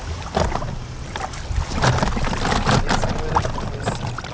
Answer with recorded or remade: recorded